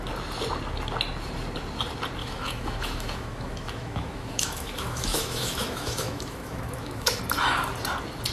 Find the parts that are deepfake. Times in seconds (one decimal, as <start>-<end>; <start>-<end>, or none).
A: 2.2-7.2